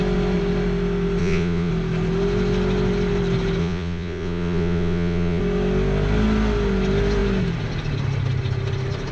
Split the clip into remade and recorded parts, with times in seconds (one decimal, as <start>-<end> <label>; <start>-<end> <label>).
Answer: 0.0-1.2 recorded; 1.2-1.7 remade; 1.7-3.6 recorded; 3.6-5.4 remade; 5.4-9.1 recorded

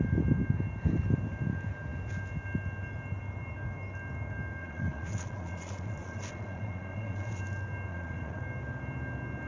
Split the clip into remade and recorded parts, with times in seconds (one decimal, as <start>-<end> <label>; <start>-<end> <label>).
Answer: 0.0-4.6 recorded; 4.6-7.4 remade; 7.4-7.9 recorded; 7.9-8.4 remade; 8.4-9.5 recorded

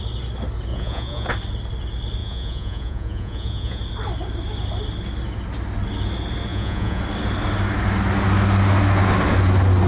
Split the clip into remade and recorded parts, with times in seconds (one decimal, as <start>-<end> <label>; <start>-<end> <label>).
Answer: 0.0-0.7 recorded; 0.7-1.3 remade; 1.3-2.2 recorded; 2.2-3.8 remade; 3.8-6.5 recorded; 6.5-7.0 remade; 7.0-9.9 recorded

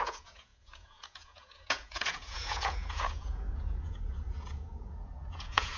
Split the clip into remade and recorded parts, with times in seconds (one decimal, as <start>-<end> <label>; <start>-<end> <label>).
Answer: 0.0-5.8 remade